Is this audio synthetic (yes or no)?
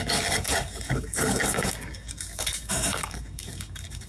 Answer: yes